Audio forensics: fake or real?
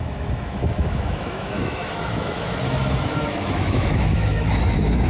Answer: fake